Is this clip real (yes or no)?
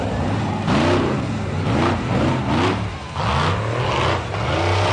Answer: yes